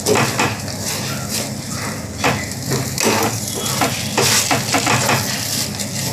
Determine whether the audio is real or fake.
real